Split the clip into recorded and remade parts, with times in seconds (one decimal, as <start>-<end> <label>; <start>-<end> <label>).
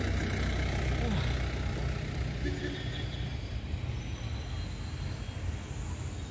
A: 0.0-6.3 recorded